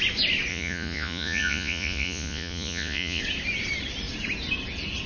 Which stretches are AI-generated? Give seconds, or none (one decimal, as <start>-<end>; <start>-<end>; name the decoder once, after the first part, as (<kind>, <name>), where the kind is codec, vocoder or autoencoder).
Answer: 0.5-3.2 (vocoder, Vocos)

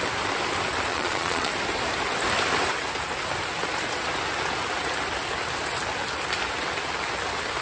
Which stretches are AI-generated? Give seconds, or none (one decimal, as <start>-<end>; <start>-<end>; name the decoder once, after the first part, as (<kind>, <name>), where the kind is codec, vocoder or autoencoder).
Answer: 0.9-1.5 (vocoder, Vocos)

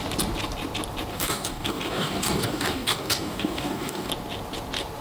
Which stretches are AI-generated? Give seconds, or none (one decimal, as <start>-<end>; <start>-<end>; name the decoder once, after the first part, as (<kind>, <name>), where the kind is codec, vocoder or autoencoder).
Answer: 1.1-4.1 (codec, DAC)

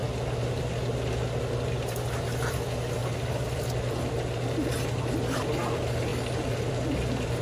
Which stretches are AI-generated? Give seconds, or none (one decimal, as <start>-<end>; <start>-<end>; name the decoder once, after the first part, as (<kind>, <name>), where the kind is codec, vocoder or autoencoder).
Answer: 3.0-4.0 (vocoder, BigVGAN v2)

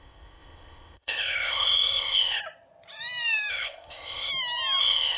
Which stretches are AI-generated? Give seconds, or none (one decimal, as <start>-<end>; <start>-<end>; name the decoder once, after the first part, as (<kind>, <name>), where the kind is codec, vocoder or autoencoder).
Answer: 0.0-2.4 (codec, ZipCodec); 3.5-4.3; 4.8-5.2

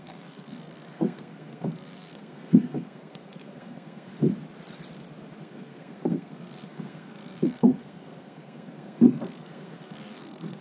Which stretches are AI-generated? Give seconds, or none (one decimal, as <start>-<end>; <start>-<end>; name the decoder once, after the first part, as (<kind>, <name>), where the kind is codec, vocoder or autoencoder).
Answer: 0.0-4.1 (codec, SNAC); 5.4-10.6

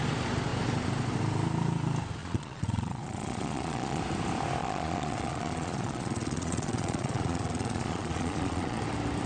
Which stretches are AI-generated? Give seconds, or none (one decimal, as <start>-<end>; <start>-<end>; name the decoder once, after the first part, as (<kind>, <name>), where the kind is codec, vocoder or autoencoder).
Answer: 2.2-4.0 (vocoder, Vocos); 4.6-8.8

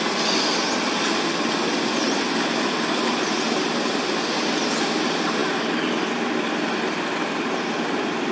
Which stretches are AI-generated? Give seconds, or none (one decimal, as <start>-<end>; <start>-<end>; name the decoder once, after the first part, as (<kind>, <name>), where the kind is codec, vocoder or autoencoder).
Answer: none